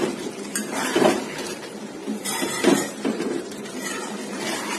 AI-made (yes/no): yes